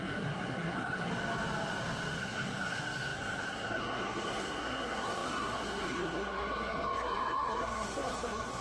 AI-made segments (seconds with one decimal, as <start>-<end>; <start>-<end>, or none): 0.0-1.1; 2.2-8.6